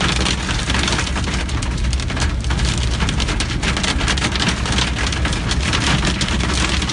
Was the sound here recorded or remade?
recorded